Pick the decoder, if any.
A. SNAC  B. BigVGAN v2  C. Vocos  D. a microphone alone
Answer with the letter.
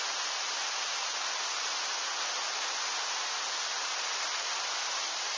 D